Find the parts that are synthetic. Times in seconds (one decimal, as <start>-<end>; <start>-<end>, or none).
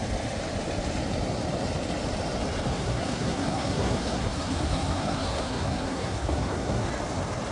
2.7-6.9